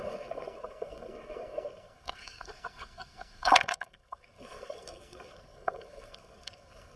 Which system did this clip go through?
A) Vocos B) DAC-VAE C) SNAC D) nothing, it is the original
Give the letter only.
C